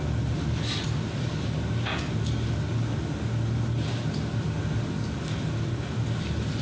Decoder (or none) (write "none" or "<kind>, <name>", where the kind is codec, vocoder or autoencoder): none